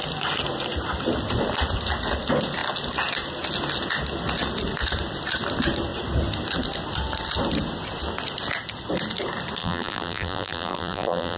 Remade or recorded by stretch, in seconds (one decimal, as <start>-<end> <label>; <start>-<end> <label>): 0.0-9.6 recorded; 9.6-11.4 remade